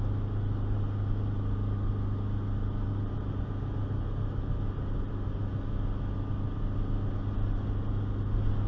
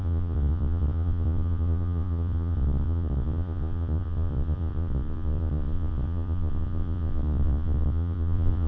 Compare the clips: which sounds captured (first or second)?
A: first